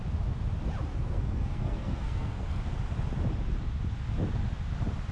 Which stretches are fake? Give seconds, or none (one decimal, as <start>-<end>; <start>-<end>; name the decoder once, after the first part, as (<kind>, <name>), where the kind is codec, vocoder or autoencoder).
1.0-2.6 (codec, SNAC)